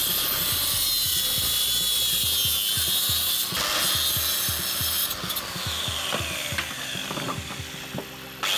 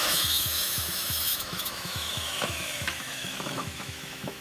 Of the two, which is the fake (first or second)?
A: second